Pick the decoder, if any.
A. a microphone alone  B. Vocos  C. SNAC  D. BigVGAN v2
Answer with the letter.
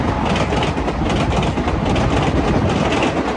A